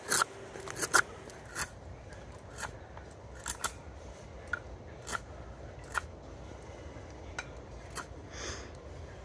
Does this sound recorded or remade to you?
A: recorded